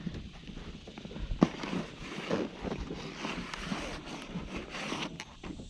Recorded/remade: recorded